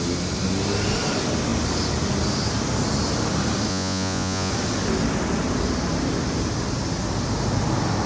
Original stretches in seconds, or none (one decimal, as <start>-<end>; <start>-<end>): 0.0-3.7; 4.5-8.1